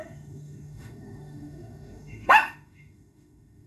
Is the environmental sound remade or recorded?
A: remade